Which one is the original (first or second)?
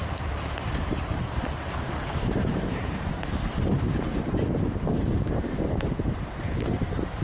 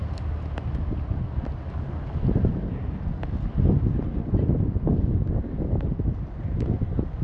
second